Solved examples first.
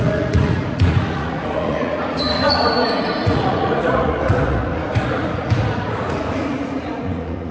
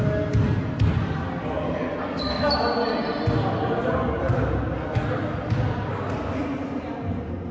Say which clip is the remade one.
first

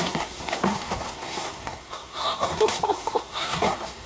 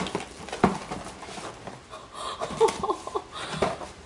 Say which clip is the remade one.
first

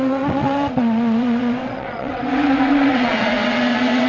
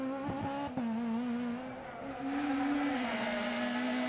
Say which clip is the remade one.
first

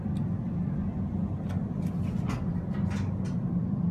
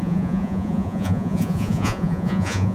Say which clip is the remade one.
second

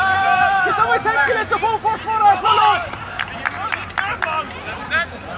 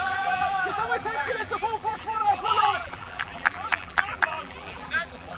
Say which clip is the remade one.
second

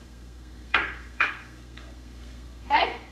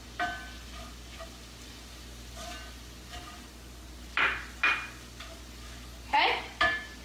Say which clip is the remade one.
first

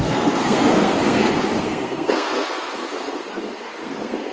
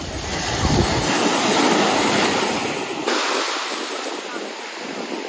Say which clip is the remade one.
first